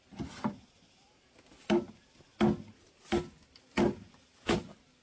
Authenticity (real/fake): real